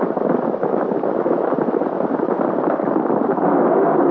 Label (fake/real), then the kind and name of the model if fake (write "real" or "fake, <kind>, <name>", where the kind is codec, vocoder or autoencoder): fake, vocoder, BigVGAN v2